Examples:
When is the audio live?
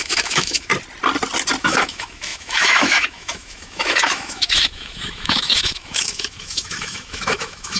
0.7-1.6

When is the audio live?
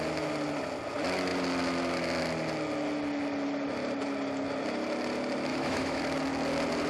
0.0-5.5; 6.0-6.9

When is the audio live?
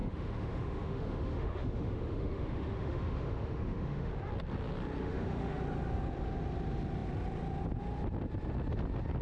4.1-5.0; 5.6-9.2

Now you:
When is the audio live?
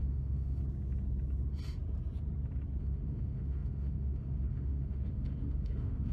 0.6-2.8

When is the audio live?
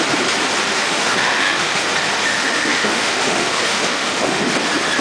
0.0-0.7; 1.8-2.3; 4.4-5.0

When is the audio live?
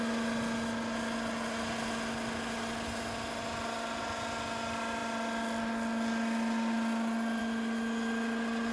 0.0-8.7